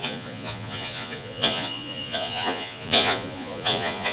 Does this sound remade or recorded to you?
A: remade